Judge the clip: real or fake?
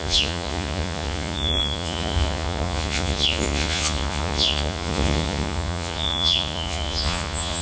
fake